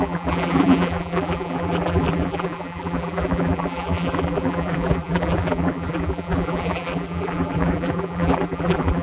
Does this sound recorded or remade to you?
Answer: remade